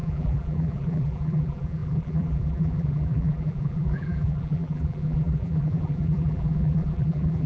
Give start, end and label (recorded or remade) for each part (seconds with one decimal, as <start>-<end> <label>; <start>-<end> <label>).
0.0-7.5 remade